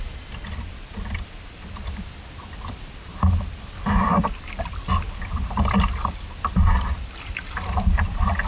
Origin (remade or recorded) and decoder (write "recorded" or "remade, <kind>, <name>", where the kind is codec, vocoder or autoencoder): remade, vocoder, BigVGAN v2